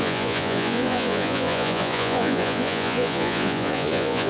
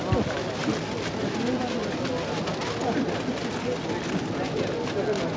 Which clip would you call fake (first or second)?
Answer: first